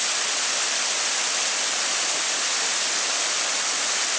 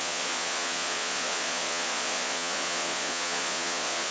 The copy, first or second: second